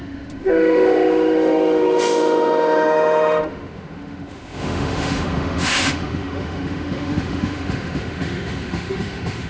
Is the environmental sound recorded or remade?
remade